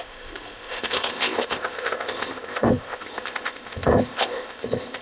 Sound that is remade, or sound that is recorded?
remade